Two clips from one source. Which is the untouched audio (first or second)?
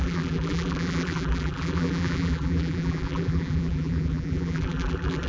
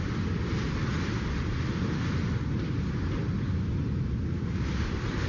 second